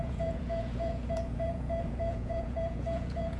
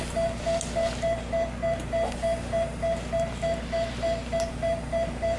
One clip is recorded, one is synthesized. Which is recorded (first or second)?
second